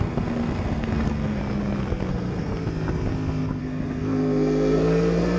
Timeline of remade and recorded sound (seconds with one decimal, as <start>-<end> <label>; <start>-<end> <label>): 0.0-1.4 remade; 1.4-2.1 recorded; 2.1-2.5 remade; 2.5-3.6 recorded; 3.6-5.4 remade